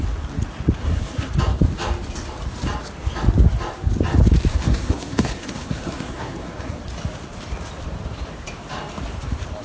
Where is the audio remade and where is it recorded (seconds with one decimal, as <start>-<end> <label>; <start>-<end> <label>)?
0.0-0.8 recorded; 0.8-1.3 remade; 1.3-4.5 recorded; 4.5-6.8 remade; 6.8-9.6 recorded